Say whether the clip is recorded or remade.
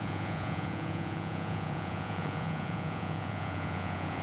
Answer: remade